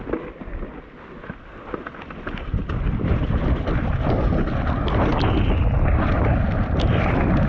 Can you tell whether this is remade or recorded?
recorded